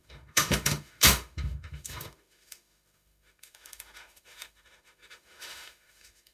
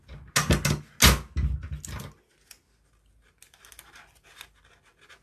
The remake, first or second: first